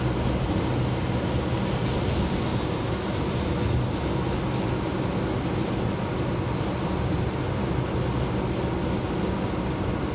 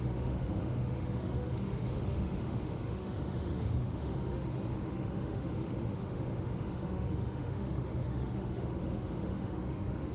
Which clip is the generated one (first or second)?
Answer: second